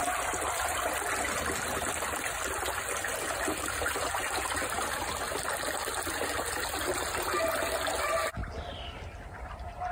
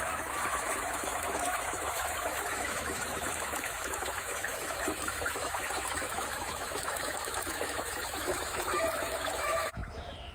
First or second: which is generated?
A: second